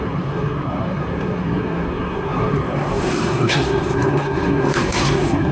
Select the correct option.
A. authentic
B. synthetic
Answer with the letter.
B